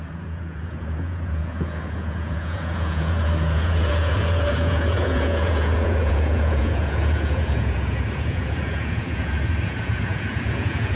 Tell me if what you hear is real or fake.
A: fake